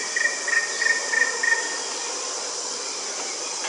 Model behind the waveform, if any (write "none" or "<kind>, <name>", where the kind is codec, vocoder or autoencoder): none